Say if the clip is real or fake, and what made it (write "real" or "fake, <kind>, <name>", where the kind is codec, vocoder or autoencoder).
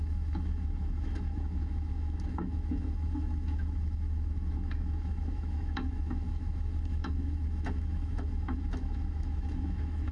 fake, autoencoder, DAC-VAE